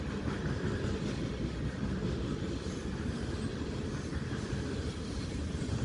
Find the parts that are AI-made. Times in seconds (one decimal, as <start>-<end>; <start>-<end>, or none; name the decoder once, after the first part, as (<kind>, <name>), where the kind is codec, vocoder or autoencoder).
2.2-5.8 (vocoder, BigVGAN v2)